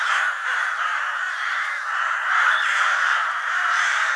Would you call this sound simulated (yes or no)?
yes